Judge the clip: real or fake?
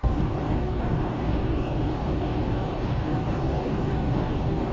fake